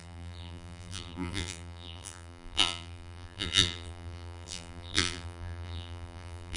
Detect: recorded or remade remade